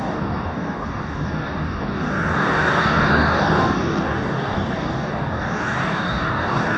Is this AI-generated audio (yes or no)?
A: yes